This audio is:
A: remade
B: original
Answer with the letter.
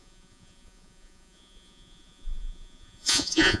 A